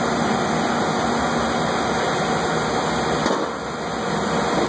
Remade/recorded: recorded